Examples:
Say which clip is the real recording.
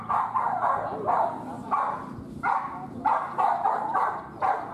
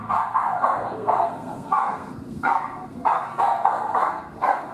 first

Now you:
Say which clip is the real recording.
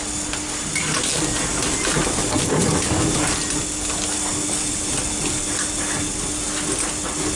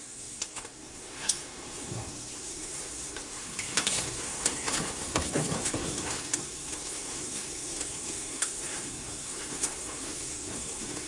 first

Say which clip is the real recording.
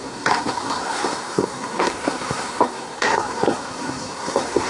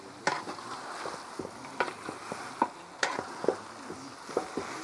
second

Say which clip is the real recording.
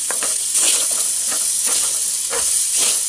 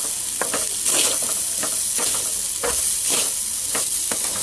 second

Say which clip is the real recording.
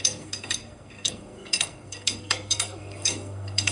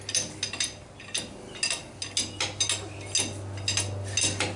second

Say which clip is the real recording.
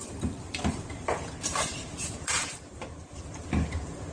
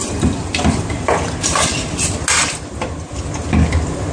second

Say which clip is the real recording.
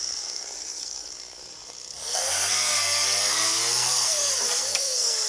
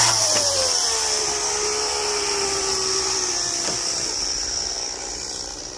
second